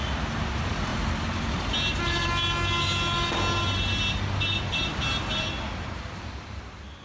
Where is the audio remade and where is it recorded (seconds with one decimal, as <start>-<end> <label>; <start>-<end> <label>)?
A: 0.0-0.9 recorded; 0.9-2.3 remade; 2.3-7.0 recorded